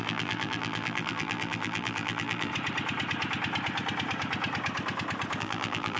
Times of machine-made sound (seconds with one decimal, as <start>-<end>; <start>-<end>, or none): 0.0-2.5; 5.4-6.0